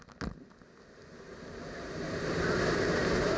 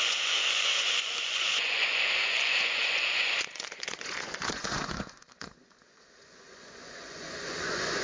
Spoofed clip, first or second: second